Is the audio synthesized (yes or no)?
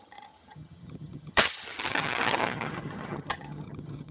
yes